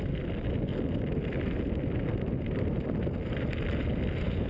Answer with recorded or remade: recorded